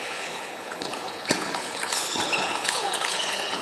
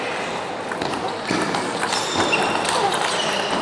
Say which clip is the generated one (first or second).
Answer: first